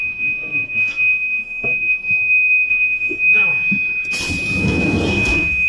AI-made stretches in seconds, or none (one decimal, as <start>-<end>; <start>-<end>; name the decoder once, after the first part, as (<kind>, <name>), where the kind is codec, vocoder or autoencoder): 0.0-2.0 (codec, SNAC); 2.7-3.2; 4.6-5.7